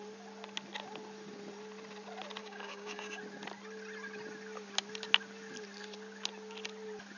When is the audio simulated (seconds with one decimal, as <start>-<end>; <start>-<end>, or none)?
2.4-3.2